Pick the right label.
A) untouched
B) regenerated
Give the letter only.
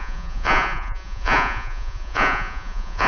B